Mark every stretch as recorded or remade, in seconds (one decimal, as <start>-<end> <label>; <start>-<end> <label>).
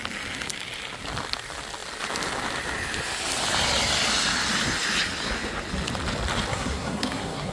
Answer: 0.0-6.5 recorded; 6.5-7.5 remade